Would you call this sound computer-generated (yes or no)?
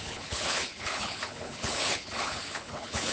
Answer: yes